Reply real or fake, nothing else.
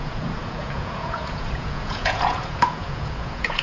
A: fake